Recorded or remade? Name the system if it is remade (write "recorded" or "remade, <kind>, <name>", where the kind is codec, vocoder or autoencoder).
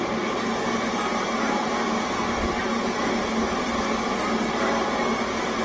recorded